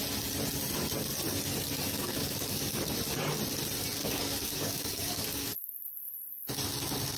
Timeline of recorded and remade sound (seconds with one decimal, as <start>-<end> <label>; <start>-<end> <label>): 0.0-1.9 recorded; 1.9-2.8 remade; 2.8-4.0 recorded; 4.0-5.8 remade; 5.8-7.2 recorded